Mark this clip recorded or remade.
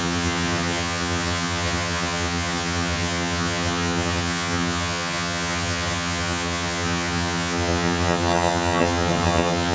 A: remade